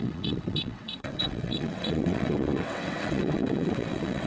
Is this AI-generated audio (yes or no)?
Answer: yes